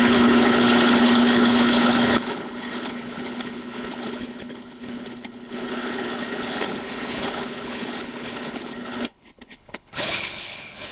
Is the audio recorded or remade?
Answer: remade